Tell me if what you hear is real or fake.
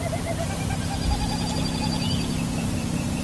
fake